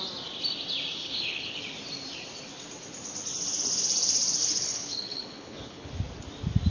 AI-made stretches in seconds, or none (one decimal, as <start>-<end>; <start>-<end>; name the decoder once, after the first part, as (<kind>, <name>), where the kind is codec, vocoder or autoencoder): 1.0-1.6 (codec, HILCodec); 4.4-5.9